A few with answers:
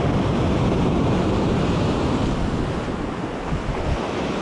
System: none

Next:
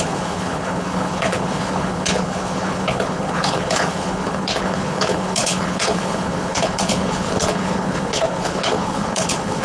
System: codec, HILCodec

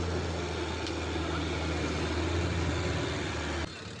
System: none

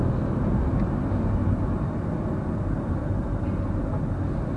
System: none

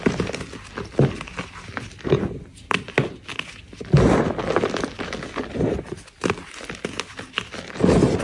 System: none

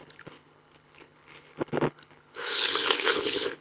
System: codec, HILCodec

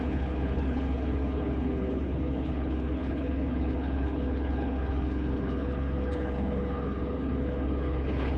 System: codec, HILCodec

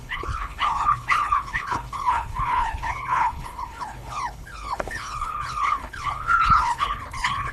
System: codec, HILCodec